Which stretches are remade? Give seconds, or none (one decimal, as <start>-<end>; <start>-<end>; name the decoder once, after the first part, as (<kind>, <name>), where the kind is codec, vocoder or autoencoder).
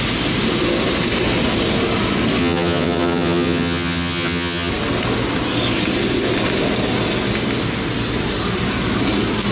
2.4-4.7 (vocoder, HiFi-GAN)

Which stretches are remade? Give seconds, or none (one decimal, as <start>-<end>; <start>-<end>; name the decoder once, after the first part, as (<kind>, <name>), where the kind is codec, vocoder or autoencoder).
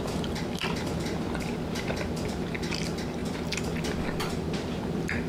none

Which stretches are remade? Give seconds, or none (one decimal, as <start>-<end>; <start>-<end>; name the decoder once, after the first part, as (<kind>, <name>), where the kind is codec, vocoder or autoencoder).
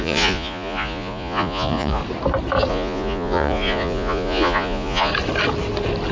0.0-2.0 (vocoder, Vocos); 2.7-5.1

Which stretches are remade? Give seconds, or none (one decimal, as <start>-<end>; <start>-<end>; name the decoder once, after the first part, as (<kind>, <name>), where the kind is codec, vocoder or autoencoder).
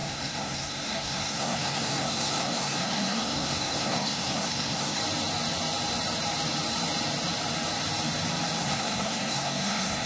0.0-5.0 (codec, SNAC); 8.6-10.1